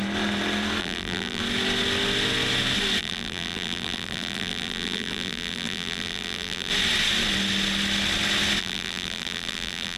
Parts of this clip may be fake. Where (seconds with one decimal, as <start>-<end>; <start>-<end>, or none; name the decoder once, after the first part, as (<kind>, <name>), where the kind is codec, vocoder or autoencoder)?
0.8-1.4 (vocoder, BigVGAN v2); 3.0-6.7; 8.6-10.0